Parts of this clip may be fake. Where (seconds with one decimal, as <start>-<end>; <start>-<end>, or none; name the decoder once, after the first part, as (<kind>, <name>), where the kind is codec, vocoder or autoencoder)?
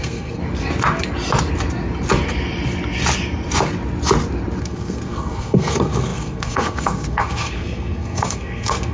0.0-0.4 (codec, SNAC); 4.6-8.9